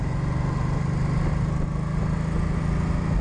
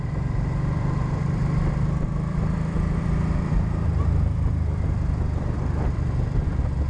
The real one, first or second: first